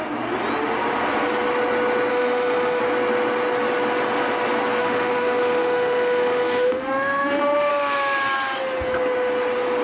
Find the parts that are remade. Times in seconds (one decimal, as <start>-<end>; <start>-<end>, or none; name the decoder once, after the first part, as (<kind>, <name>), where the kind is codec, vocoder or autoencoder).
2.1-2.8 (autoencoder, DAC-VAE); 4.8-7.7